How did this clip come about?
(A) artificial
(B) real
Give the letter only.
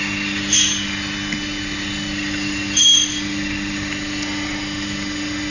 B